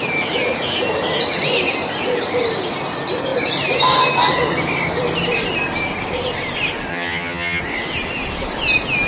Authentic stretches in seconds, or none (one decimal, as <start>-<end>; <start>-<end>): 0.0-6.9; 7.6-9.1